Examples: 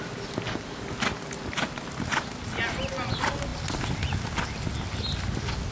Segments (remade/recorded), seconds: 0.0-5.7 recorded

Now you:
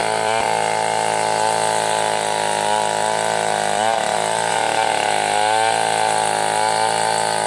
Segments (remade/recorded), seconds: 0.0-4.5 remade; 4.5-7.5 recorded

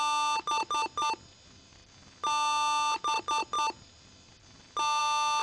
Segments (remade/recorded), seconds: 0.0-5.4 recorded

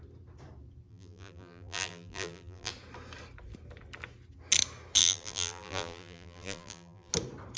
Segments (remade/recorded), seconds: 0.0-0.9 recorded; 0.9-2.7 remade; 2.7-5.0 recorded; 5.0-7.1 remade; 7.1-7.6 recorded

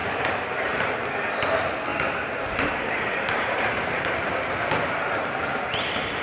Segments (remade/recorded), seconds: 0.0-0.8 remade; 0.8-1.9 recorded; 1.9-4.5 remade; 4.5-6.2 recorded

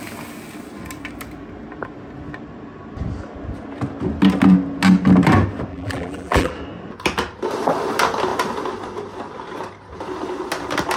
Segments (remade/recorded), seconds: 0.0-5.7 recorded; 5.7-6.5 remade; 6.5-11.0 recorded

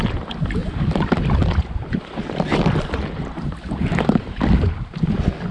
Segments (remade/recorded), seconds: 0.0-0.6 recorded; 0.6-2.2 remade; 2.2-5.5 recorded

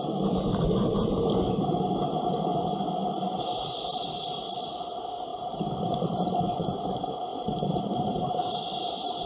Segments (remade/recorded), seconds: 0.0-2.5 recorded; 2.5-4.8 remade; 4.8-5.3 recorded; 5.3-6.1 remade; 6.1-7.3 recorded; 7.3-8.5 remade; 8.5-9.3 recorded